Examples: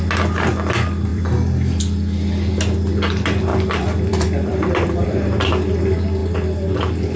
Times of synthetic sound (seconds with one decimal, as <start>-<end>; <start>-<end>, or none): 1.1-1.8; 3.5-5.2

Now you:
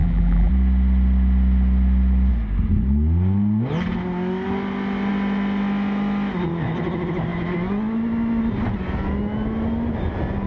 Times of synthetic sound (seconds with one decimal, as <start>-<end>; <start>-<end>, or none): 0.0-0.5

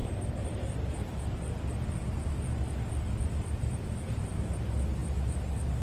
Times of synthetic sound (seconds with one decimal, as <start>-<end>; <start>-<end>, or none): 0.0-5.0

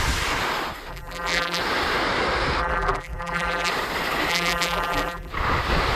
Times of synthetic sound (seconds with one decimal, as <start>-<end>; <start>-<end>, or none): 0.9-1.6; 2.6-3.7; 4.3-5.3

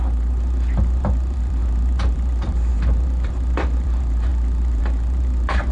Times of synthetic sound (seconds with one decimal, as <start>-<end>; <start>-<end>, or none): 0.0-5.7